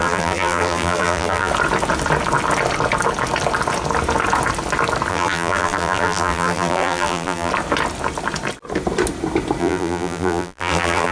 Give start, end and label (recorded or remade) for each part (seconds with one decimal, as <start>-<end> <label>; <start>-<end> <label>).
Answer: 0.0-1.5 remade; 1.5-5.1 recorded; 5.1-7.5 remade; 7.5-9.6 recorded; 9.6-11.1 remade